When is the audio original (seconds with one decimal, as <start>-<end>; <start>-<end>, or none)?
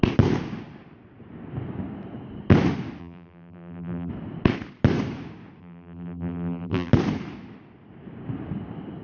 0.0-3.0; 4.1-5.6; 6.9-9.0